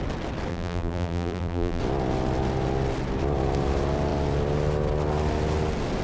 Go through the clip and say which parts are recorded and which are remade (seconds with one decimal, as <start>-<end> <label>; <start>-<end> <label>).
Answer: 0.0-0.5 recorded; 0.5-1.8 remade; 1.8-6.0 recorded